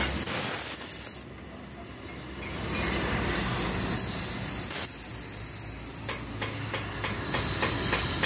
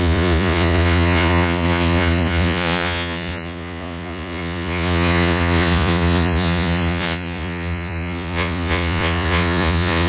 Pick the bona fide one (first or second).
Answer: first